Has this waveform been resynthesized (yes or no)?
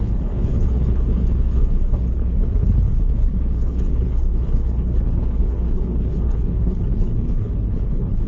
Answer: yes